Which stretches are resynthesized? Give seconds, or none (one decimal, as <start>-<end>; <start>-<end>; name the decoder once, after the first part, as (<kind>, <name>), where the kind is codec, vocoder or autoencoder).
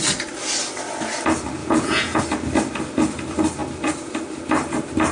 1.6-2.2 (vocoder, Vocos)